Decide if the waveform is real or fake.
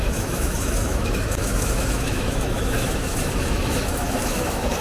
fake